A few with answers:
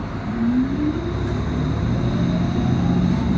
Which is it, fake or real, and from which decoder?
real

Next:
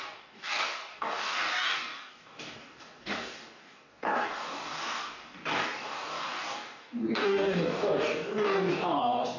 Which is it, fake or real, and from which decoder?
fake, codec, DAC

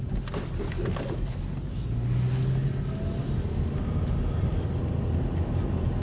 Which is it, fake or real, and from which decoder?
real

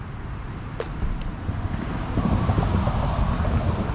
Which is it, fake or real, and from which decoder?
real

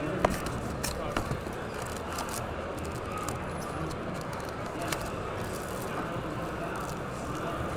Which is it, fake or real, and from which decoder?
real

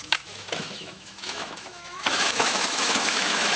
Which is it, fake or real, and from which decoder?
fake, autoencoder, DAC-VAE